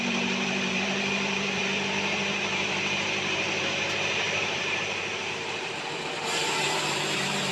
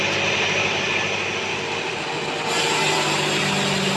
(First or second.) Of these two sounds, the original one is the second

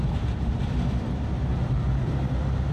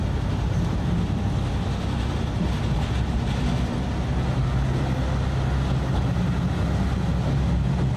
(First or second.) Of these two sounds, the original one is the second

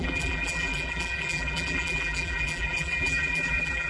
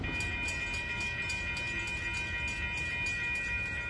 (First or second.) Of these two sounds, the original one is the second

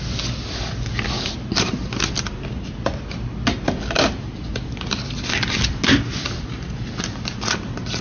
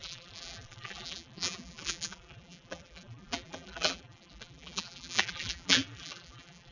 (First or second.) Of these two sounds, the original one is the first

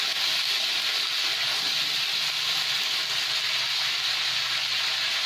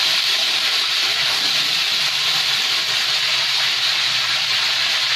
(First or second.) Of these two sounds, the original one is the first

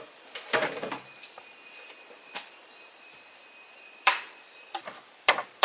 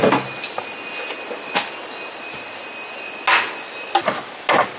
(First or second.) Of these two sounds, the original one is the second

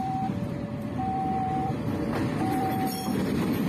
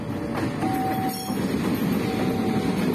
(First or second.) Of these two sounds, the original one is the second